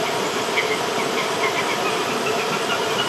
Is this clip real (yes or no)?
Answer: yes